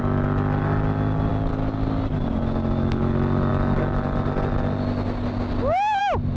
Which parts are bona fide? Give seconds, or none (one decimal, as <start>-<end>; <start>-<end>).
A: 0.0-6.4